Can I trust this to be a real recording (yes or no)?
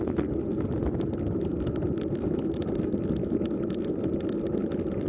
no